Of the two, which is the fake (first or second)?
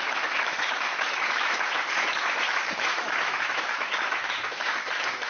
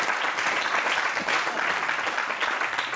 first